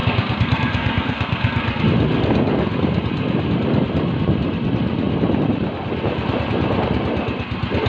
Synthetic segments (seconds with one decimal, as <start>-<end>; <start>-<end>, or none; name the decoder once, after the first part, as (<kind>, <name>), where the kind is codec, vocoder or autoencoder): 0.0-1.8 (codec, SNAC)